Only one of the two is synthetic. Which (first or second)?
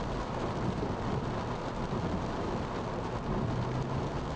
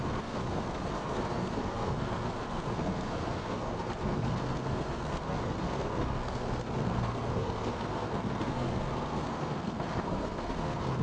second